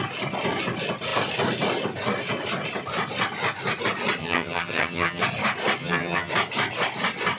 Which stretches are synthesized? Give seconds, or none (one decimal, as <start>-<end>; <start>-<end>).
4.2-5.2; 5.8-6.3